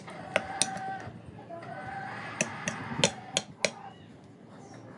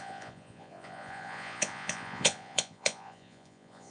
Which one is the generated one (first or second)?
second